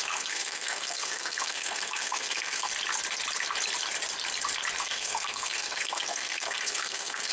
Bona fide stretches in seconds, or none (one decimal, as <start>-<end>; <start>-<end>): 2.7-4.8